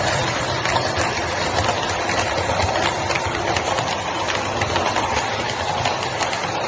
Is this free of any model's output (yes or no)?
no